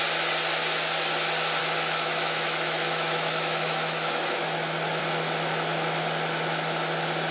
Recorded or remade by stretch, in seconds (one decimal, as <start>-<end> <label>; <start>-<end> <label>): 0.0-1.6 recorded; 1.6-5.0 remade; 5.0-7.3 recorded